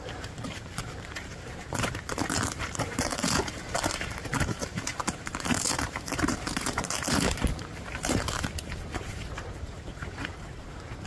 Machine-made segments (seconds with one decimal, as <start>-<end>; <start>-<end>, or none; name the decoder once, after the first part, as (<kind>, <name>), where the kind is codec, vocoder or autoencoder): 0.0-11.1 (vocoder, BigVGAN v2)